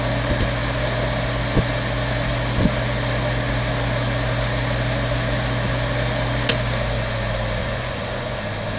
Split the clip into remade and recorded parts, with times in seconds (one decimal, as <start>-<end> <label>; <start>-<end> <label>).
0.0-7.6 recorded; 7.6-8.4 remade; 8.4-8.8 recorded